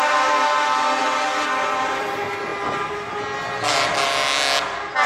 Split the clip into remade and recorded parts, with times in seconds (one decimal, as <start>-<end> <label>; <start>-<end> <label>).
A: 0.0-5.1 recorded